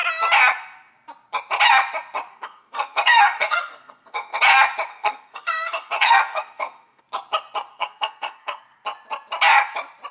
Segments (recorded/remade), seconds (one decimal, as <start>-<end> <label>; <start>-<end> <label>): 0.0-2.3 recorded; 2.3-4.4 remade; 4.4-4.9 recorded; 4.9-7.0 remade; 7.0-7.7 recorded; 7.7-8.6 remade; 8.6-10.1 recorded